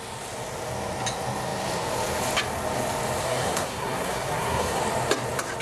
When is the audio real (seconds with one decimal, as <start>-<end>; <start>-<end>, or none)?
0.0-3.2; 4.8-5.6